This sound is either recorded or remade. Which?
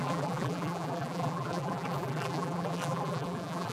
remade